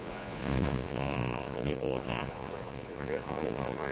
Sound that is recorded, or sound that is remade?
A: remade